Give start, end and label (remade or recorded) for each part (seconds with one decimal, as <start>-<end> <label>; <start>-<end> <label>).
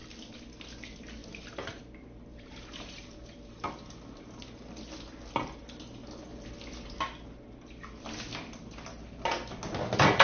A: 0.0-1.2 recorded; 1.2-1.8 remade; 1.8-2.3 recorded; 2.3-3.7 remade; 3.7-10.2 recorded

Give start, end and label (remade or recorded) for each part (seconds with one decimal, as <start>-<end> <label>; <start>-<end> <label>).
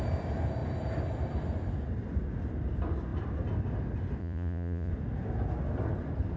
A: 0.0-4.2 recorded; 4.2-4.9 remade; 4.9-6.4 recorded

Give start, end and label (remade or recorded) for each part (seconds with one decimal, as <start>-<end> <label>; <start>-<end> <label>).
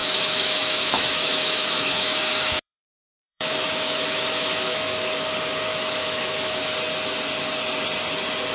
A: 0.0-5.1 remade; 5.1-5.7 recorded; 5.7-6.7 remade; 6.7-8.5 recorded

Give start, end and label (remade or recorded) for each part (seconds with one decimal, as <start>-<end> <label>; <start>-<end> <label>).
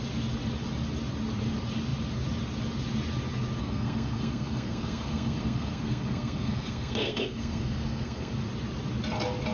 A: 0.0-3.6 recorded; 3.6-8.3 remade; 8.3-9.5 recorded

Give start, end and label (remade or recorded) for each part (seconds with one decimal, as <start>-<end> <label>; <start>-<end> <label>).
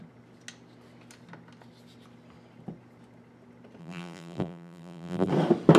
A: 0.0-3.8 recorded; 3.8-5.3 remade; 5.3-5.8 recorded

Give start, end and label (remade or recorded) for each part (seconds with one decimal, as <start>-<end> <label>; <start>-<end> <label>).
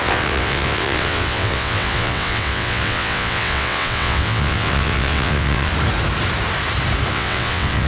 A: 0.0-5.7 remade; 5.7-7.1 recorded; 7.1-7.9 remade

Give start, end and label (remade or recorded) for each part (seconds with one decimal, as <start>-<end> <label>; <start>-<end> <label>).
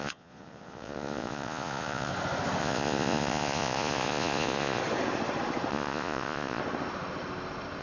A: 0.0-2.1 remade; 2.1-2.6 recorded; 2.6-4.8 remade; 4.8-5.7 recorded; 5.7-6.6 remade; 6.6-7.8 recorded